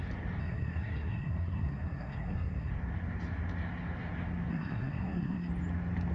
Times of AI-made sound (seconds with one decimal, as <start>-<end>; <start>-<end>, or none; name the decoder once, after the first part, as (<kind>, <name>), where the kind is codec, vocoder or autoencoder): 0.4-2.7 (codec, SNAC); 4.5-5.5